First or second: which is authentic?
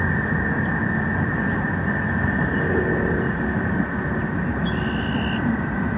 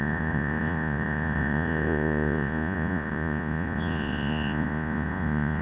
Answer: first